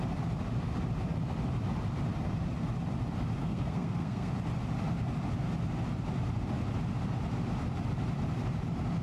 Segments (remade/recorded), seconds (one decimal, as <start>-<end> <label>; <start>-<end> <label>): 0.0-3.4 recorded; 3.4-4.3 remade; 4.3-9.0 recorded